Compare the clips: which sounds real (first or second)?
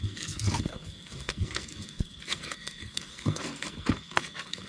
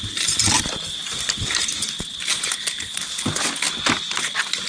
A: second